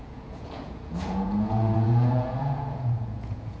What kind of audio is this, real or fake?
fake